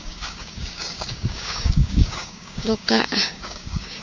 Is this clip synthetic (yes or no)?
yes